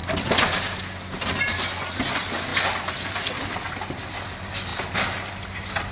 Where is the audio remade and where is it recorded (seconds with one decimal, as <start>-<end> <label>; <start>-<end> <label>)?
0.0-5.9 recorded

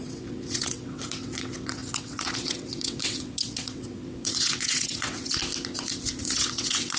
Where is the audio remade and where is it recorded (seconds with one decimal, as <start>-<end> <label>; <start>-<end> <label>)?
0.0-5.4 remade; 5.4-6.2 recorded; 6.2-7.0 remade

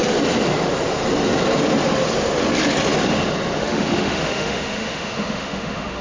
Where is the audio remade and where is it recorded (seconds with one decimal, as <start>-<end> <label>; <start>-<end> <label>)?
0.0-3.6 recorded; 3.6-6.0 remade